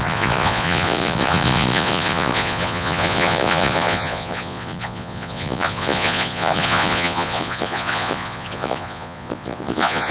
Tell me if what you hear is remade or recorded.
remade